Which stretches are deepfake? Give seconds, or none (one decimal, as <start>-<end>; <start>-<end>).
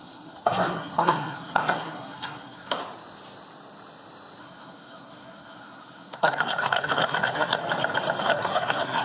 0.0-2.8; 4.4-7.6; 8.2-9.0